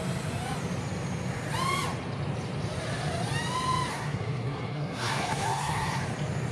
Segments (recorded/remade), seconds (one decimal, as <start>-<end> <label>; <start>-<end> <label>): 0.0-3.9 recorded; 3.9-6.0 remade; 6.0-6.5 recorded

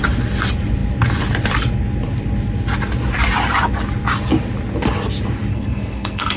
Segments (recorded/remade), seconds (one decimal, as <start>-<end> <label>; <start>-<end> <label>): 0.0-5.5 recorded; 5.5-6.4 remade

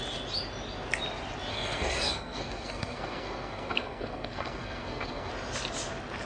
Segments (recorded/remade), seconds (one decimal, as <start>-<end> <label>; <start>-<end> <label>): 0.0-1.5 recorded; 1.5-5.3 remade; 5.3-6.3 recorded

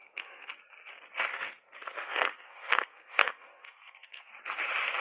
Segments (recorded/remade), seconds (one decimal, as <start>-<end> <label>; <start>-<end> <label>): 0.0-0.5 remade; 0.5-1.3 recorded; 1.3-4.3 remade; 4.3-5.0 recorded

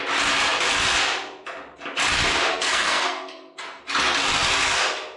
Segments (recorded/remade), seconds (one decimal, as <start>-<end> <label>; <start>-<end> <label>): 0.0-2.5 recorded; 2.5-3.8 remade; 3.8-5.2 recorded

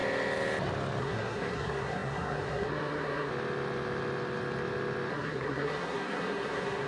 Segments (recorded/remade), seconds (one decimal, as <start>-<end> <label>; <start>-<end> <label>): 0.0-1.0 recorded; 1.0-3.3 remade; 3.3-5.1 recorded; 5.1-6.9 remade